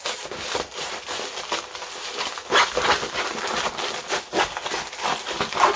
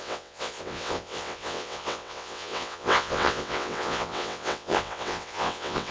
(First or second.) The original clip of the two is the first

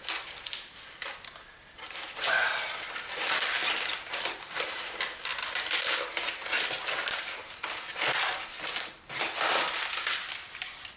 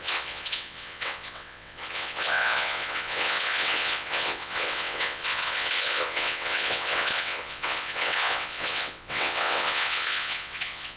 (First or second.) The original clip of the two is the first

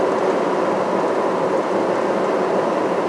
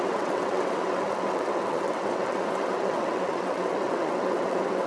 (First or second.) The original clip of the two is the first